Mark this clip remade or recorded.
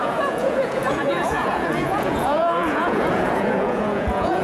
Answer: remade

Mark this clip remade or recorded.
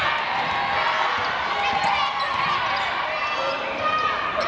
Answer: recorded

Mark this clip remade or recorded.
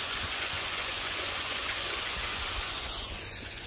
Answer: remade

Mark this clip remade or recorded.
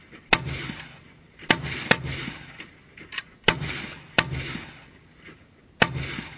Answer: recorded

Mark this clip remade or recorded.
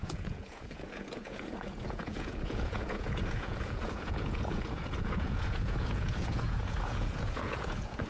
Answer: remade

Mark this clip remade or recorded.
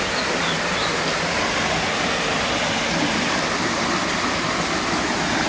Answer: recorded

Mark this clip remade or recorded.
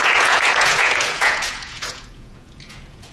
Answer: remade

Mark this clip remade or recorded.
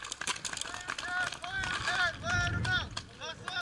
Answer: recorded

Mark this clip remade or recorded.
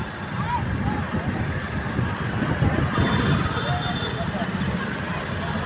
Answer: recorded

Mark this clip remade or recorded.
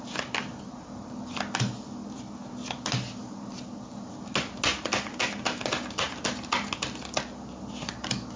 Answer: recorded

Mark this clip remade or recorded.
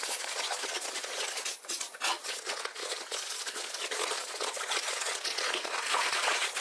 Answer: remade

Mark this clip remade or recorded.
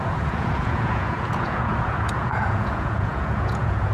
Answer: remade